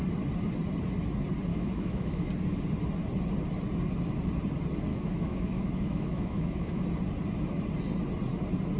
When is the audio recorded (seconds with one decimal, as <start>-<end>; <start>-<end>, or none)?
0.0-1.5; 2.3-4.9; 6.8-8.8